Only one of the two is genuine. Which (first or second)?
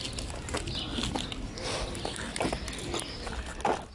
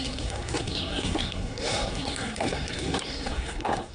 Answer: first